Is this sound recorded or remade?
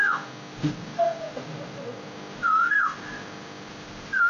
recorded